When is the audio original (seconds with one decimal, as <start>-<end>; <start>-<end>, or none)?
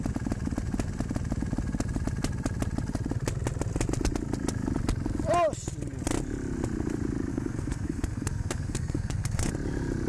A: 0.0-7.3; 9.5-10.1